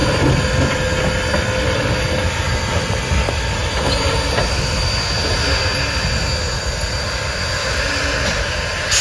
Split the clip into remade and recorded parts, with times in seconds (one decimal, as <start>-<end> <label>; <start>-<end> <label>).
0.0-9.0 recorded